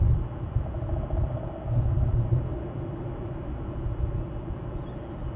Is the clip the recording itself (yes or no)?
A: yes